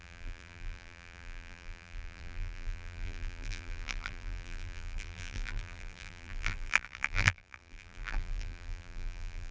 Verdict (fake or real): fake